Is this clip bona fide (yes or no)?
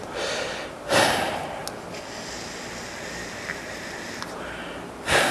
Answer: yes